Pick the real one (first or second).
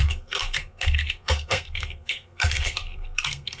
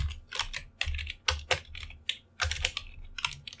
second